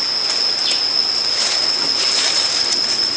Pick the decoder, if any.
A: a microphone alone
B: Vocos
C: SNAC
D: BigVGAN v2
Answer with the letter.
A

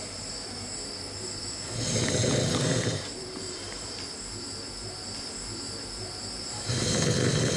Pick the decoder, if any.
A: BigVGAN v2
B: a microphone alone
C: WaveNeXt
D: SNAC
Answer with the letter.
A